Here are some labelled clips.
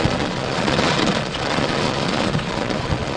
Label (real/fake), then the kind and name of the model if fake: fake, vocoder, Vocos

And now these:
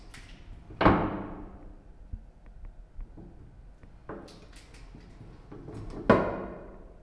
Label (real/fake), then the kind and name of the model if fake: real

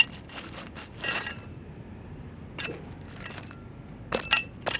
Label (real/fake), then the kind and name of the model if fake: real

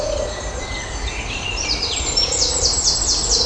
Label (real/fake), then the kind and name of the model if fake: real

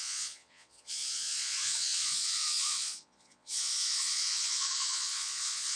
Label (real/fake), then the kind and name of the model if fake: fake, vocoder, Vocos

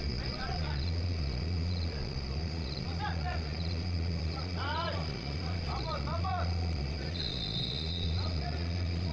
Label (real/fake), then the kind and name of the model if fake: fake, vocoder, Vocos